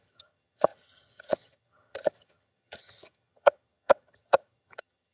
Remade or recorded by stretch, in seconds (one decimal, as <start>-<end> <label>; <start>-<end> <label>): 0.0-5.1 remade